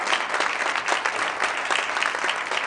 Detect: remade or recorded recorded